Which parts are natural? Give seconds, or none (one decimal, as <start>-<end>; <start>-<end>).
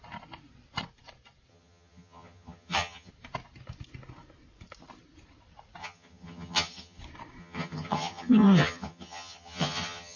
0.0-1.5; 3.1-5.8; 7.0-7.4